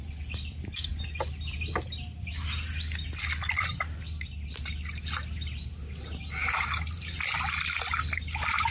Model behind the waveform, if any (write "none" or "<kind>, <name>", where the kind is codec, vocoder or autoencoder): vocoder, BigVGAN v2